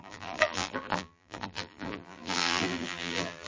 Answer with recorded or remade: remade